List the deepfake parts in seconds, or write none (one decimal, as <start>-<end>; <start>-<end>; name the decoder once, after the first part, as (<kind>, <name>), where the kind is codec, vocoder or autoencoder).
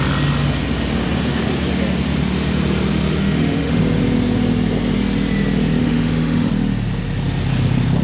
2.9-3.8 (autoencoder, DAC-VAE); 5.8-6.5